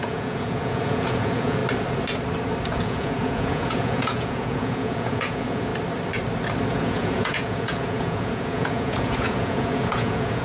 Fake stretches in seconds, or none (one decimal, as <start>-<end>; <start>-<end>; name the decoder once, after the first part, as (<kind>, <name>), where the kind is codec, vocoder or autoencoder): 0.0-1.6 (vocoder, Vocos); 2.7-5.7; 6.7-10.4